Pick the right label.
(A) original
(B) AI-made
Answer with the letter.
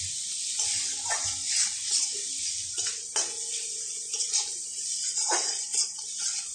A